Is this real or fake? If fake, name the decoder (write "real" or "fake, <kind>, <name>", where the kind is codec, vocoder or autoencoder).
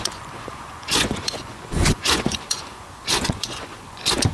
fake, vocoder, Vocos